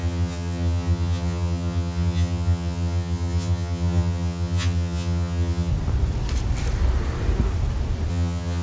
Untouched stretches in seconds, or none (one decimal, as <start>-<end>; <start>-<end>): 5.7-8.1

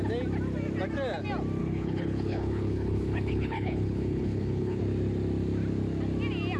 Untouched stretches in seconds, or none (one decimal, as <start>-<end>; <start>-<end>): 0.0-1.6; 4.8-6.6

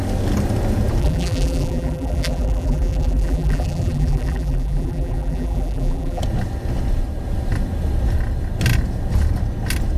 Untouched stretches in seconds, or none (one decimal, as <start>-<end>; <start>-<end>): 0.0-1.0; 6.2-10.0

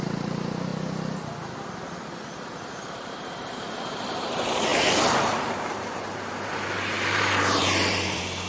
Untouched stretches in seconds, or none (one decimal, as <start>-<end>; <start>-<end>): 0.7-2.9